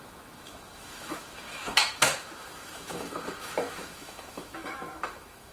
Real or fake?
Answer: fake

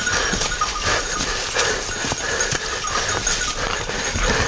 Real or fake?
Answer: real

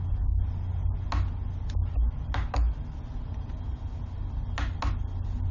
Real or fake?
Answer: real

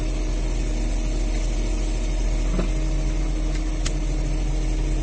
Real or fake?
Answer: real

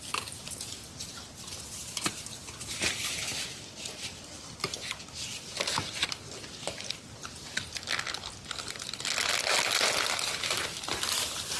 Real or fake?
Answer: real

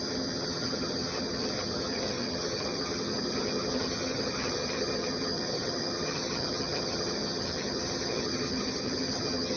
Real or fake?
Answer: fake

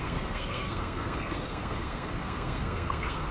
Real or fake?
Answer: fake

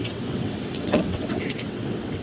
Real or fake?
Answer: fake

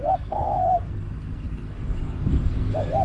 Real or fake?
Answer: fake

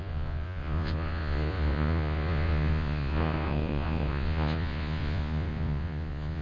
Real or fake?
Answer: fake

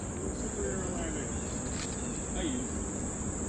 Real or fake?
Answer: real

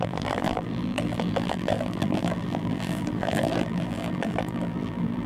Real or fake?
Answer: fake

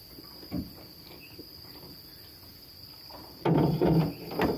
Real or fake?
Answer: real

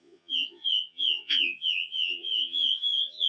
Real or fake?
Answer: fake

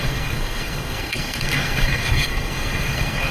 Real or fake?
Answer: fake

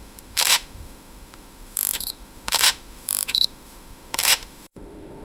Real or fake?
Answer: fake